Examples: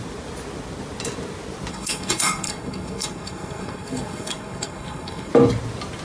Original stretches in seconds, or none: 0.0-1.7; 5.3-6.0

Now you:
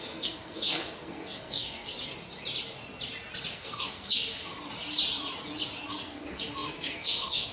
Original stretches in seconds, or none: 1.9-3.5; 4.5-5.9

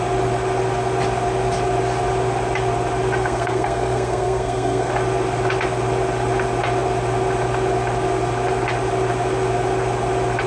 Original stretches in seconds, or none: 0.0-3.2; 4.9-10.5

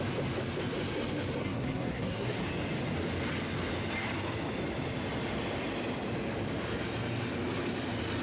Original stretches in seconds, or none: 0.0-1.4; 2.4-8.2